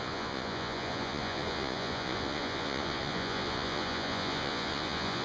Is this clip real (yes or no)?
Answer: no